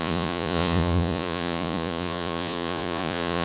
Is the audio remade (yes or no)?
yes